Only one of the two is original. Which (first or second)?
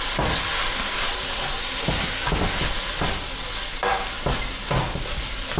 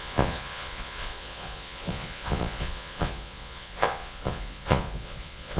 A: first